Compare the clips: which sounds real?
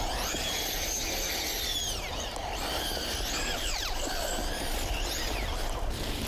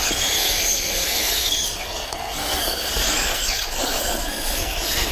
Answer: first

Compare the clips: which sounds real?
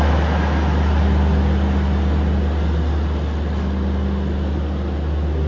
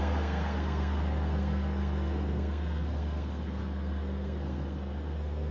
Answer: first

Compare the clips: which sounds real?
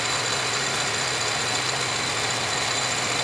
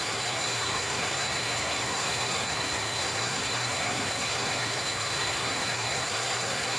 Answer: first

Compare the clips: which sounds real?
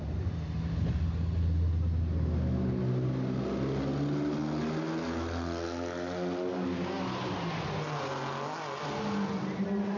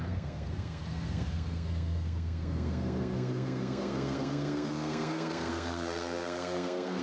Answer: first